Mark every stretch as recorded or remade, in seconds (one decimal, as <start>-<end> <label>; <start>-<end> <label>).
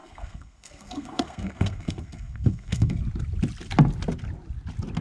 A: 0.0-3.0 remade; 3.0-5.0 recorded